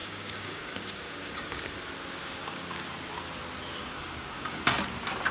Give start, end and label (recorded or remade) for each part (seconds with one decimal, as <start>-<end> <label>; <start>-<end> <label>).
0.0-1.6 remade; 1.6-2.2 recorded; 2.2-2.8 remade; 2.8-3.8 recorded; 3.8-4.6 remade; 4.6-5.3 recorded